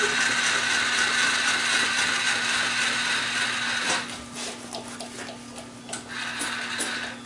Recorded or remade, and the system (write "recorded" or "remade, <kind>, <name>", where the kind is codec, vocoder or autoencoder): recorded